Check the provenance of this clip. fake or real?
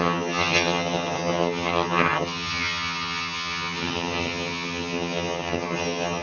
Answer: fake